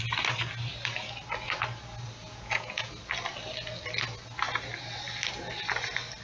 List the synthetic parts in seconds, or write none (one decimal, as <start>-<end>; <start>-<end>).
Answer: 2.2-2.9